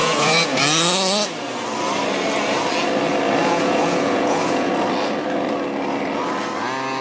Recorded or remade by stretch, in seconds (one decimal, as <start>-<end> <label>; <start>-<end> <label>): 0.0-0.6 remade; 0.6-3.4 recorded; 3.4-4.7 remade; 4.7-7.0 recorded